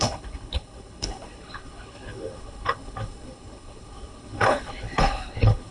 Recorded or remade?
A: remade